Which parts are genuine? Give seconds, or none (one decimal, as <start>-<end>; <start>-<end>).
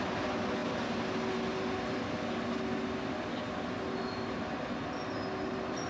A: 0.0-5.9